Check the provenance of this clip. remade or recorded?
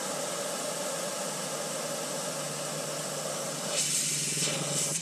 recorded